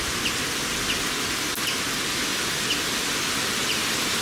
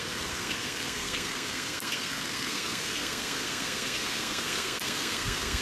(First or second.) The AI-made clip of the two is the second